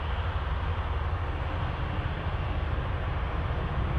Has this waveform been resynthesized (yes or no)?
no